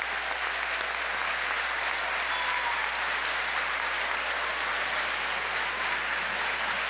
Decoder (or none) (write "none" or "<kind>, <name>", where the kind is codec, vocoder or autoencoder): none